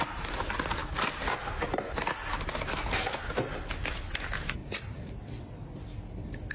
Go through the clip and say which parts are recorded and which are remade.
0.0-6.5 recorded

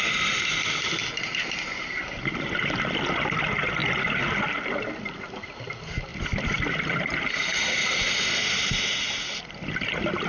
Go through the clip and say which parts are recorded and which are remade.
0.0-10.3 recorded